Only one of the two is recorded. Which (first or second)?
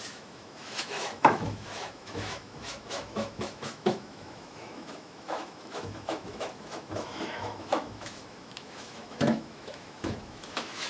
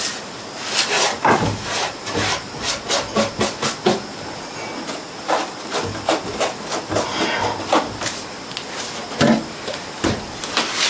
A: second